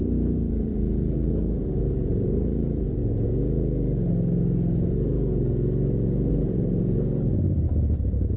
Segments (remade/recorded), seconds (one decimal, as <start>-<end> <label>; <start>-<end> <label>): 0.0-3.0 remade; 3.0-6.3 recorded; 6.3-8.4 remade